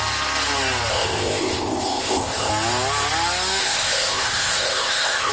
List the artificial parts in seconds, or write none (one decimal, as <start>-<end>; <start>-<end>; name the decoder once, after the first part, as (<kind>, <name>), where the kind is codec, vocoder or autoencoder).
0.9-2.5 (codec, ZipCodec); 3.6-5.3